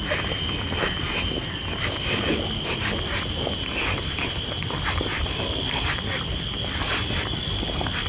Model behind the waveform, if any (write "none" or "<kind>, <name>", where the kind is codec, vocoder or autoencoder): none